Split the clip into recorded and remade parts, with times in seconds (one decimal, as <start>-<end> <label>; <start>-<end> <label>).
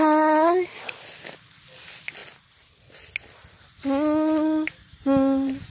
0.0-5.7 recorded